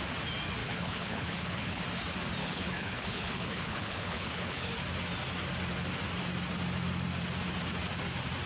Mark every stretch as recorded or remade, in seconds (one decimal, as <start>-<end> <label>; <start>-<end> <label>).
0.0-0.6 recorded; 0.6-1.8 remade; 1.8-2.4 recorded; 2.4-4.7 remade; 4.7-8.5 recorded